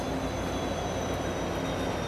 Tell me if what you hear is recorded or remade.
recorded